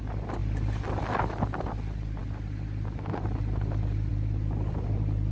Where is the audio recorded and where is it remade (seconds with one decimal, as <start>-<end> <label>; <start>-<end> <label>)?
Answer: 0.0-5.3 recorded